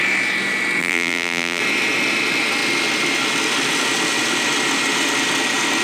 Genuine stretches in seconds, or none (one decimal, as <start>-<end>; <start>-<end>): 0.0-0.8; 1.6-5.8